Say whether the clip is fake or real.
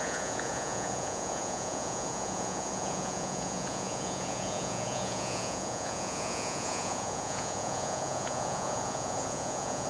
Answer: fake